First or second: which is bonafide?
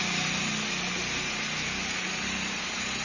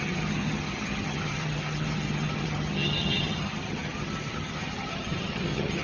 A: first